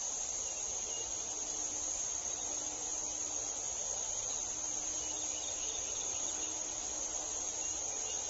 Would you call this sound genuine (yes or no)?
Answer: yes